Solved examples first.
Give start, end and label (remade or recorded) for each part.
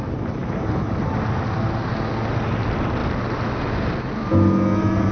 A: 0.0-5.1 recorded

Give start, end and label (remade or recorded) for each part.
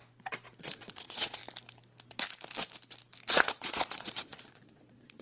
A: 0.0-0.6 recorded; 0.6-1.4 remade; 1.4-3.3 recorded; 3.3-5.2 remade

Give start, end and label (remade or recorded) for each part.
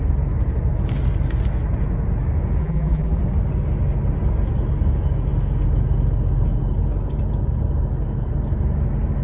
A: 0.0-2.6 recorded; 2.6-3.2 remade; 3.2-9.2 recorded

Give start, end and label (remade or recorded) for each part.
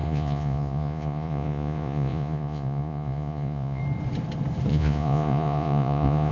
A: 0.0-3.8 remade; 3.8-4.7 recorded; 4.7-6.3 remade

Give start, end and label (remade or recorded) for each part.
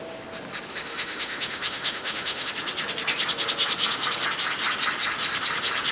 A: 0.0-0.7 recorded; 0.7-2.5 remade; 2.5-5.9 recorded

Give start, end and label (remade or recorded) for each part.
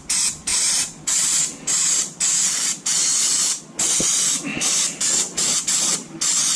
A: 0.0-0.5 recorded; 0.5-2.3 remade; 2.3-2.9 recorded; 2.9-3.6 remade; 3.6-4.5 recorded; 4.5-5.4 remade; 5.4-6.6 recorded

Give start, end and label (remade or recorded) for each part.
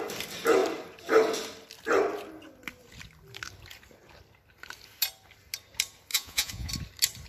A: 0.0-6.1 recorded; 6.1-6.7 remade; 6.7-7.3 recorded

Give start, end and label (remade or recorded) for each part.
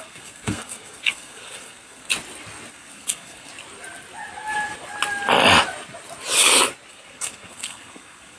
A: 0.0-2.1 remade; 2.1-2.7 recorded; 2.7-3.5 remade; 3.5-6.9 recorded; 6.9-8.4 remade